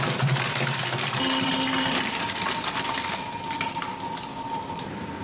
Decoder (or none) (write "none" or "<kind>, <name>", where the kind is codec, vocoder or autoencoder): none